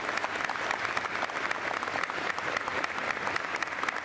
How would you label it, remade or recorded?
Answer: remade